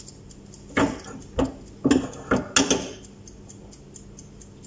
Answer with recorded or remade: recorded